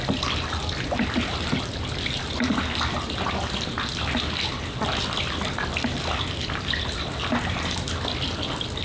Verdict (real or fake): real